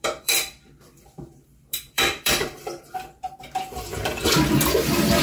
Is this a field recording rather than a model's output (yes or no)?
no